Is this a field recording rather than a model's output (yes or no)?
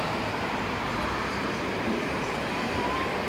no